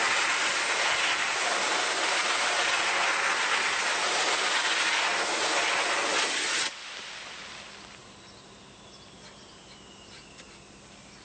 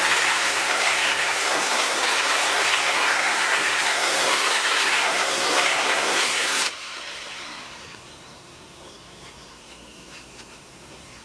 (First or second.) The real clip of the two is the first